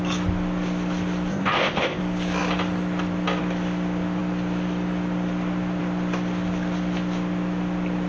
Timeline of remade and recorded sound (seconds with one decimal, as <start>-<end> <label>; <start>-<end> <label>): 0.0-1.3 recorded; 1.3-2.0 remade; 2.0-8.1 recorded